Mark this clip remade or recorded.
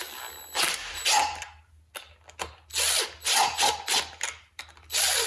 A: recorded